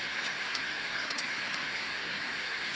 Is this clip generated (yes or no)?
yes